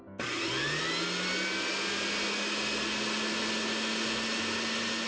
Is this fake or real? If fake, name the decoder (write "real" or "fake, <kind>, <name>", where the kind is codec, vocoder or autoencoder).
real